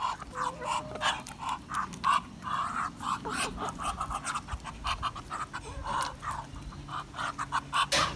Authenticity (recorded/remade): recorded